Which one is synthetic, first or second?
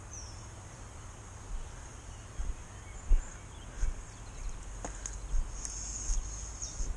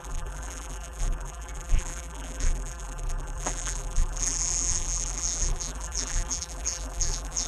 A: second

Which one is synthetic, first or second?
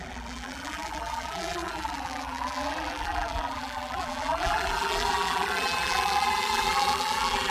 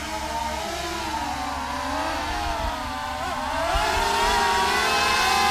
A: first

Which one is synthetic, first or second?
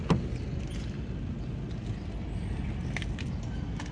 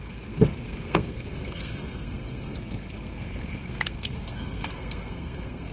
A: second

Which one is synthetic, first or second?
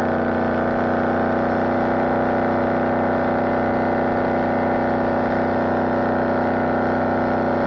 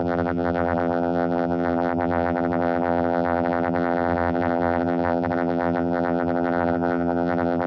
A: second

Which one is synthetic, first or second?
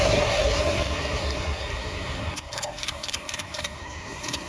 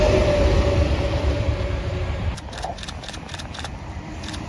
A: first